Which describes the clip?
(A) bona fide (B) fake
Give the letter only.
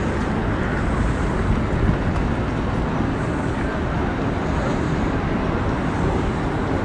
A